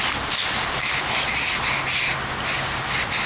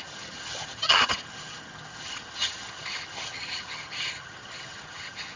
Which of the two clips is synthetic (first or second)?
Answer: second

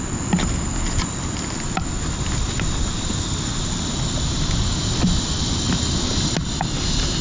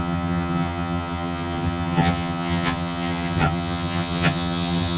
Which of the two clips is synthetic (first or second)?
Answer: second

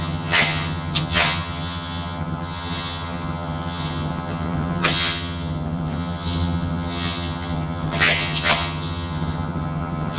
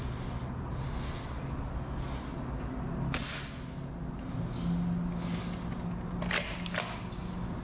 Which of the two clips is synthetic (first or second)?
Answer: first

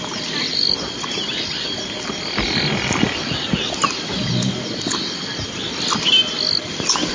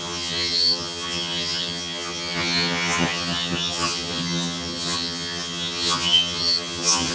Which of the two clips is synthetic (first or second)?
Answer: second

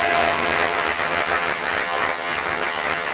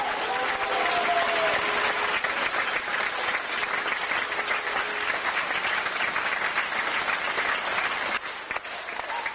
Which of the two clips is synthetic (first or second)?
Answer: first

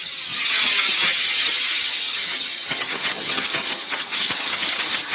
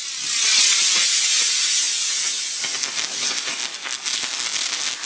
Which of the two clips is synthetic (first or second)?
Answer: first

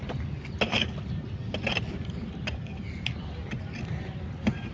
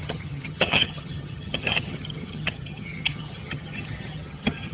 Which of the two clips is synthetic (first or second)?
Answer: second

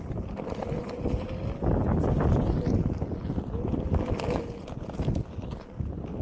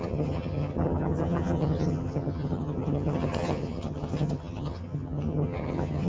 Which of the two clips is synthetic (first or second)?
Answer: second